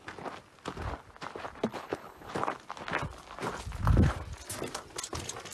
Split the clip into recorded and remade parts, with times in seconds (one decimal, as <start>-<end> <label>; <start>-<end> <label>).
0.0-1.7 recorded; 1.7-2.3 remade; 2.3-5.5 recorded